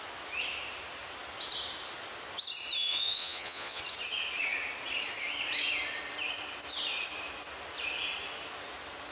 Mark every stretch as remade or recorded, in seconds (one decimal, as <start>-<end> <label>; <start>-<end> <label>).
0.0-2.8 recorded; 2.8-3.8 remade; 3.8-9.1 recorded